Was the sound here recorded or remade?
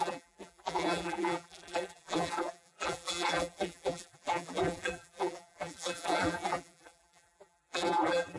remade